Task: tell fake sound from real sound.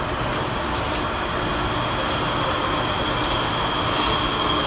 real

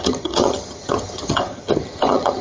fake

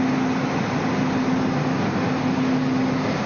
real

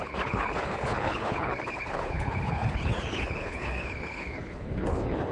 fake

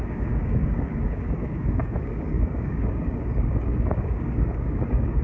fake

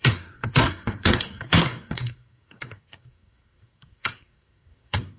fake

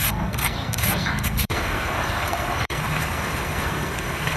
fake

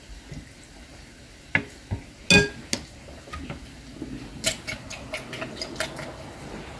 real